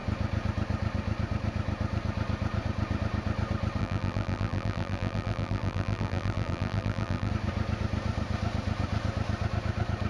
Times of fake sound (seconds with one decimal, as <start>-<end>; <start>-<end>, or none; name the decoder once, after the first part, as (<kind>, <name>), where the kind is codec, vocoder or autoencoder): 3.8-7.3 (vocoder, BigVGAN v2)